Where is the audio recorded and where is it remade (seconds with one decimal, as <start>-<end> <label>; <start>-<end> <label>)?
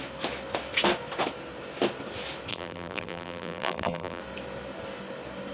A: 0.0-2.5 recorded; 2.5-4.2 remade; 4.2-5.5 recorded